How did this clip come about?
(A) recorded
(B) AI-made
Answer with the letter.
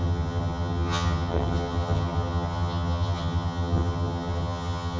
B